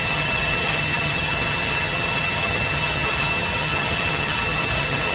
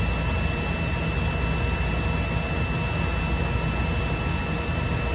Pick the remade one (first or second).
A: first